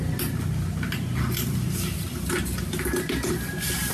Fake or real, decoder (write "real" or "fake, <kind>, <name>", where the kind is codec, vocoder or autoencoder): real